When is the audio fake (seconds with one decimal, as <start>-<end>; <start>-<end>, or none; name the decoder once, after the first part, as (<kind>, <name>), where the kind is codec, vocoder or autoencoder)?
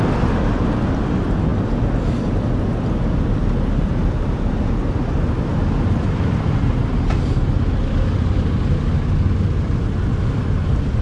none